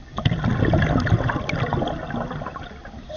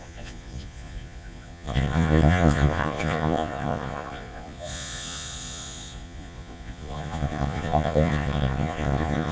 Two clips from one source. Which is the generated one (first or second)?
second